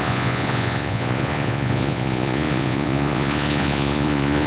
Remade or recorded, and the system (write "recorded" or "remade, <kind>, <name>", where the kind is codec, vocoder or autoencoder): remade, vocoder, Vocos